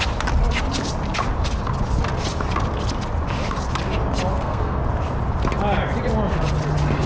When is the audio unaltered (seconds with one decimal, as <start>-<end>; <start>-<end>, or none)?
0.0-4.3; 4.8-7.1